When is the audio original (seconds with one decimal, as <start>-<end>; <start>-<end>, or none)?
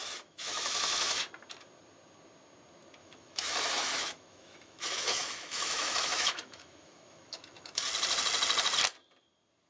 1.3-3.0; 7.8-9.7